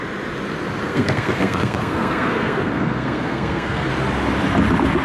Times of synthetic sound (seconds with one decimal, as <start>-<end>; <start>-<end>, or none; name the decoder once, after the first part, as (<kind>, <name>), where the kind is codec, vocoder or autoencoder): 0.9-3.9 (codec, SNAC)